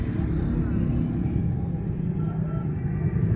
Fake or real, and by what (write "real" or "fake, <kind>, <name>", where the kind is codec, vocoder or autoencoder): real